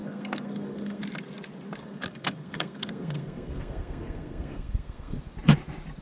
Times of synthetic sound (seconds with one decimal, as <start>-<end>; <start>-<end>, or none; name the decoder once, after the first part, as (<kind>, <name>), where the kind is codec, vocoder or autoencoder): 0.0-1.0 (codec, SNAC); 1.8-5.2